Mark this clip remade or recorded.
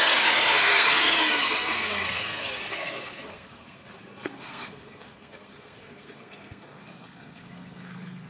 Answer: remade